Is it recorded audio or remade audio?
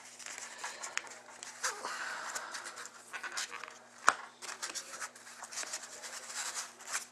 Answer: remade